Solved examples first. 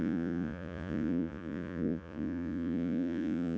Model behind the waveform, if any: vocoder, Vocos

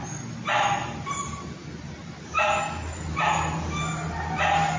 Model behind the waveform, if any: vocoder, BigVGAN v2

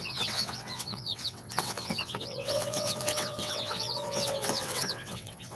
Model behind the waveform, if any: vocoder, WaveNeXt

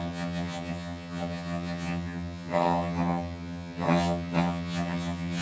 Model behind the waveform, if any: vocoder, HiFi-GAN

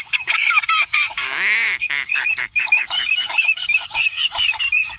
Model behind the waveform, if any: codec, DAC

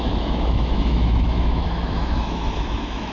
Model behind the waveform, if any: autoencoder, DAC-VAE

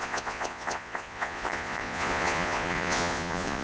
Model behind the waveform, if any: vocoder, Vocos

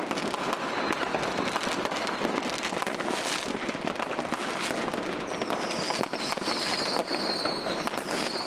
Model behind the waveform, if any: none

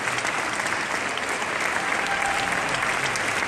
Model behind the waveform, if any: none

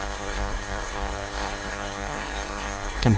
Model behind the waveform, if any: codec, SNAC